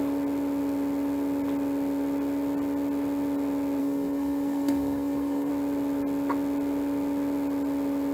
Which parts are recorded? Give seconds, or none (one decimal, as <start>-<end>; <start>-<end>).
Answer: 0.0-3.8; 5.5-8.1